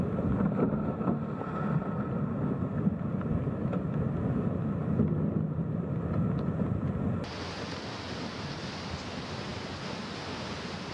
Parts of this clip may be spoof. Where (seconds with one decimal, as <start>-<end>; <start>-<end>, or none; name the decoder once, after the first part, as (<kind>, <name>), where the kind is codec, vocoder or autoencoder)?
none